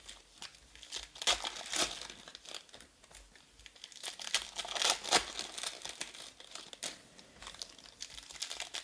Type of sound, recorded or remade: recorded